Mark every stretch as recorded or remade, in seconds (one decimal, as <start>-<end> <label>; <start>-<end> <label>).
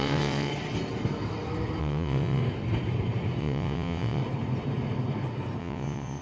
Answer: 0.0-0.5 remade; 0.5-1.8 recorded; 1.8-2.4 remade; 2.4-3.4 recorded; 3.4-4.2 remade; 4.2-5.6 recorded; 5.6-6.2 remade